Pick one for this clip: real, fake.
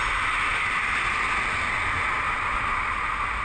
real